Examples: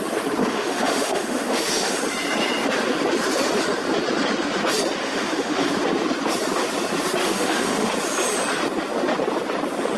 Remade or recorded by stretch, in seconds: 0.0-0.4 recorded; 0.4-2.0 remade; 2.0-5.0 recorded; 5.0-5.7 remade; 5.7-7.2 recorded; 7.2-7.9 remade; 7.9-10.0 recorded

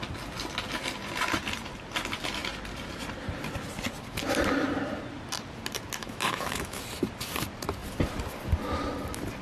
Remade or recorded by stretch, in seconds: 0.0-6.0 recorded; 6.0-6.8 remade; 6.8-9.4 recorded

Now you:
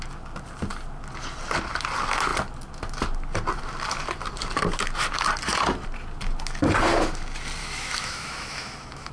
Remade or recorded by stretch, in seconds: 0.0-7.6 recorded; 7.6-9.1 remade